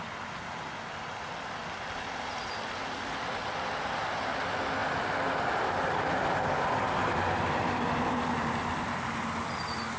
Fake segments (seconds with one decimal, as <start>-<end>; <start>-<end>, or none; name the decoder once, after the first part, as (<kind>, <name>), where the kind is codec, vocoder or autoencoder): none